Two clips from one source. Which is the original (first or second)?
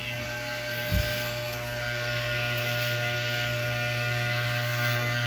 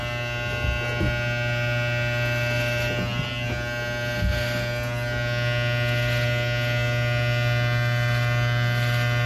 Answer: second